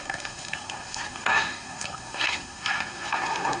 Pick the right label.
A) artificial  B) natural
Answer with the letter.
A